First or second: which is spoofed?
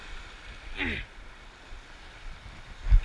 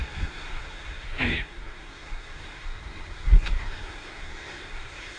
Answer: second